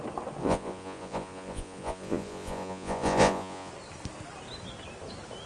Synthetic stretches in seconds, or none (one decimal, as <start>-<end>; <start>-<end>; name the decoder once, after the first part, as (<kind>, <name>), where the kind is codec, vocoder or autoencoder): 0.4-3.7 (vocoder, Vocos)